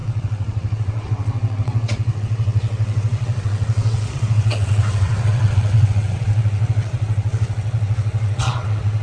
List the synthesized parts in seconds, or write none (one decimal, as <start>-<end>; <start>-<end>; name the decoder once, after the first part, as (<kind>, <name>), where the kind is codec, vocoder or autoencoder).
0.0-9.0 (vocoder, WaveNeXt)